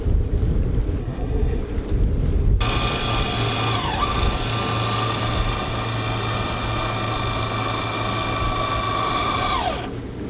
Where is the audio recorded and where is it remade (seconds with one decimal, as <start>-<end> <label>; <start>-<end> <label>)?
0.0-1.0 recorded; 1.0-1.6 remade; 1.6-10.3 recorded

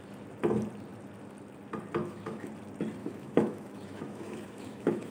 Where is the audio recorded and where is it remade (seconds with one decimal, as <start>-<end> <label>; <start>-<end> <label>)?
0.0-2.0 recorded; 2.0-2.5 remade; 2.5-3.0 recorded; 3.0-5.1 remade

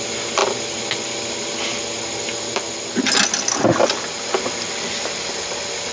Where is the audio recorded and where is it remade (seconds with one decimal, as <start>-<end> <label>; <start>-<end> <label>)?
0.0-5.9 recorded

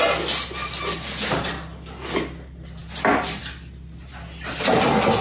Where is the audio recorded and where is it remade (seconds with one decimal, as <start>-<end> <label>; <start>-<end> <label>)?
0.0-5.2 recorded

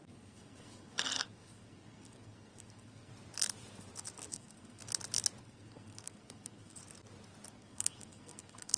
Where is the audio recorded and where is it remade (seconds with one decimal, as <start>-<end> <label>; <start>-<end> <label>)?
0.0-3.1 remade; 3.1-4.3 recorded; 4.3-4.8 remade; 4.8-5.4 recorded; 5.4-6.8 remade; 6.8-7.5 recorded; 7.5-8.8 remade

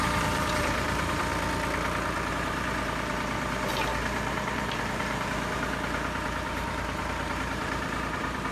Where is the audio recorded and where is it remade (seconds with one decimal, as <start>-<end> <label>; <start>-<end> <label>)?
0.0-1.3 remade; 1.3-2.3 recorded; 2.3-8.5 remade